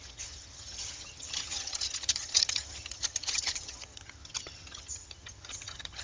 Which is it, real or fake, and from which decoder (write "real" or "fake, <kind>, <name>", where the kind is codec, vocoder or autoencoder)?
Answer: fake, vocoder, HiFi-GAN